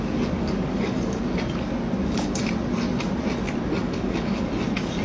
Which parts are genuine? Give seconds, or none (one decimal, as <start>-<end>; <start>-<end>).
0.0-0.4; 1.2-3.8; 4.5-5.0